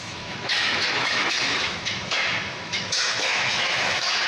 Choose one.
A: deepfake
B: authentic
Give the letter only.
A